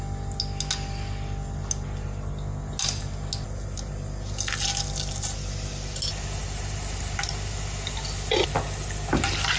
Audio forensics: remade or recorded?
recorded